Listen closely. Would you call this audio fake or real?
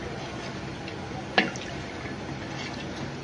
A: real